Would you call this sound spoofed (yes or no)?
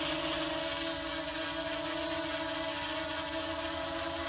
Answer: no